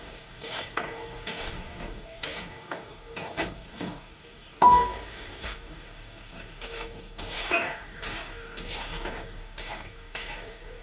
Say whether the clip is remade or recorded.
remade